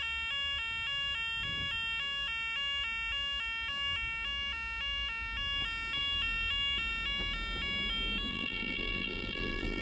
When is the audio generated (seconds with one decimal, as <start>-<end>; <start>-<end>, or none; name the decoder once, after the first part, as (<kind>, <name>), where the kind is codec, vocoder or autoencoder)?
8.3-9.8 (vocoder, BigVGAN v2)